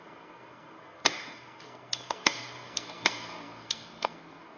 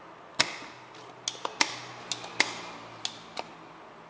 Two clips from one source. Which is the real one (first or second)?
second